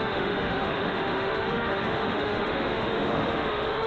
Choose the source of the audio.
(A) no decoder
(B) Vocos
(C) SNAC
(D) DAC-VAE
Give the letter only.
D